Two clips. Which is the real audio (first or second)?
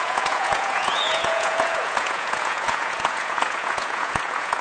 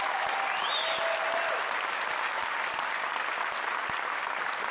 second